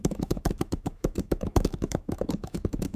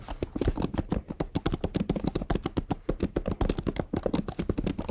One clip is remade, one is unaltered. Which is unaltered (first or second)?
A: second